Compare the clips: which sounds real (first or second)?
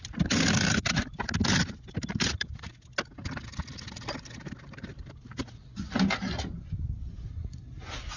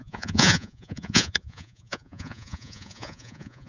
first